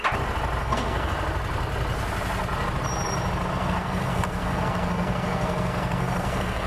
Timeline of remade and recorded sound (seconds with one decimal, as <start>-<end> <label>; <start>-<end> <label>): 0.0-0.6 recorded; 0.6-1.1 remade; 1.1-3.5 recorded; 3.5-6.7 remade

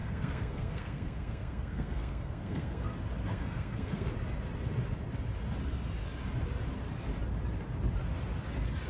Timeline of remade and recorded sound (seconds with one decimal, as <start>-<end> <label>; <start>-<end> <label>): 0.0-2.9 remade; 2.9-3.3 recorded; 3.3-4.1 remade; 4.1-8.9 recorded

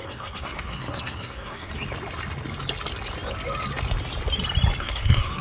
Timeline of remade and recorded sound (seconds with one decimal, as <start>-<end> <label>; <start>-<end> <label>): 0.0-1.7 remade; 1.7-4.8 recorded; 4.8-5.4 remade

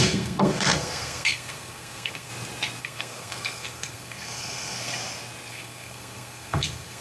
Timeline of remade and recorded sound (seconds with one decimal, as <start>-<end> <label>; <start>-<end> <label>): 0.0-2.3 remade; 2.3-2.8 recorded; 2.8-4.9 remade; 4.9-5.5 recorded; 5.5-7.0 remade

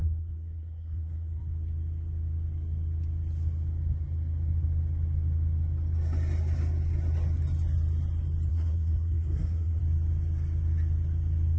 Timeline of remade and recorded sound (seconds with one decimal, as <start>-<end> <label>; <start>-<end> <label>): 0.0-1.4 remade; 1.4-8.5 recorded; 8.5-9.8 remade; 9.8-11.6 recorded

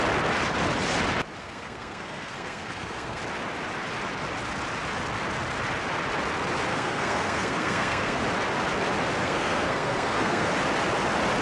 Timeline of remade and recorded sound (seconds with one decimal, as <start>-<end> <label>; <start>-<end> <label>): 0.0-1.4 recorded; 1.4-3.2 remade; 3.2-6.7 recorded; 6.7-8.2 remade; 8.2-9.2 recorded; 9.2-10.5 remade; 10.5-11.4 recorded